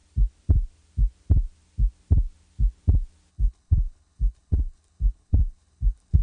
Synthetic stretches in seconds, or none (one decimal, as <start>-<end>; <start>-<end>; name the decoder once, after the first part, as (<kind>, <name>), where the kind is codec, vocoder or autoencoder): 3.3-6.2 (codec, HILCodec)